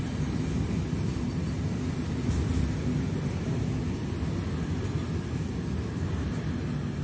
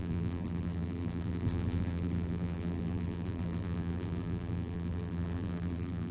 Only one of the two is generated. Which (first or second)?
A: second